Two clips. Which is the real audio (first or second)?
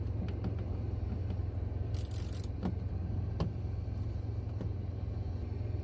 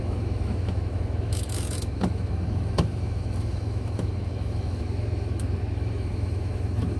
first